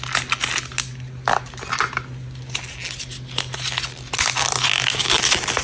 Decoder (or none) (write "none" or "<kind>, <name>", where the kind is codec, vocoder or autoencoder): none